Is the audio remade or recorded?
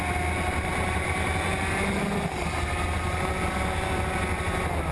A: recorded